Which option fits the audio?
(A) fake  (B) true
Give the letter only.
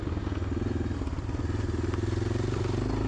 B